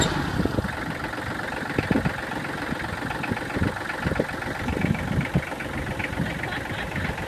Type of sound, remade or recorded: recorded